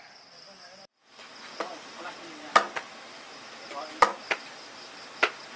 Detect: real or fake real